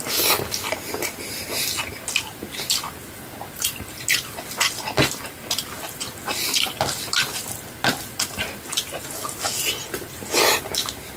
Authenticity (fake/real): real